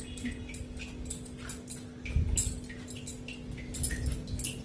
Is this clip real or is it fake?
real